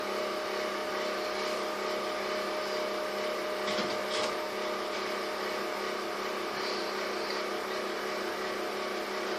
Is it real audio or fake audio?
real